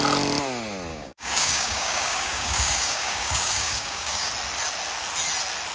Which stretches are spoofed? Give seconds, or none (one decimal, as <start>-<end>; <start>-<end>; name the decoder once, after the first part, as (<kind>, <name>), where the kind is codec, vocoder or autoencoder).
0.9-4.3 (codec, DAC)